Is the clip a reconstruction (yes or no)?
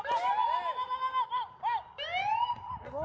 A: no